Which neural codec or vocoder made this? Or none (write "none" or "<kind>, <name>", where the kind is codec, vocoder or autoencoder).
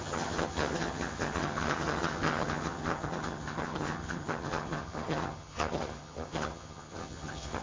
vocoder, HiFi-GAN